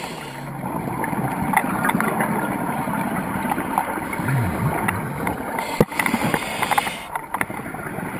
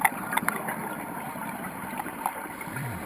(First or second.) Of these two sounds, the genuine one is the first